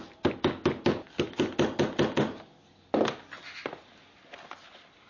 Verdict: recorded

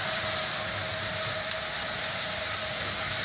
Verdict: recorded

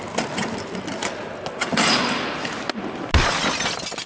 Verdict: recorded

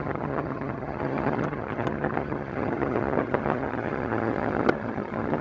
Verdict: remade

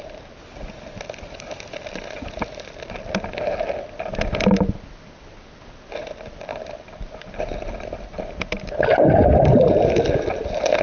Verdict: recorded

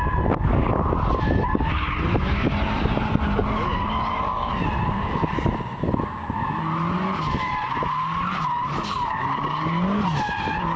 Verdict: recorded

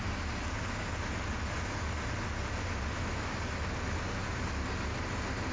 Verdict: recorded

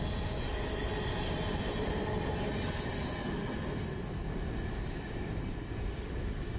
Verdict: recorded